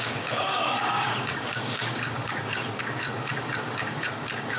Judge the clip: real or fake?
fake